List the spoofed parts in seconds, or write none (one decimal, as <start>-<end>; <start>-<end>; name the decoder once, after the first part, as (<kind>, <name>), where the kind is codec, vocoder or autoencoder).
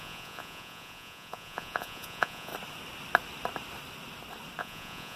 0.0-2.5 (vocoder, Vocos); 4.6-5.2